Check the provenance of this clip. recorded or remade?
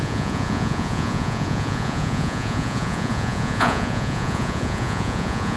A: remade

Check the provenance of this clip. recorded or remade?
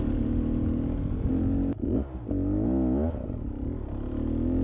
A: recorded